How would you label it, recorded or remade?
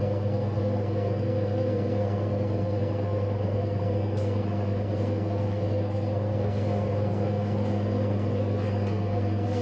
remade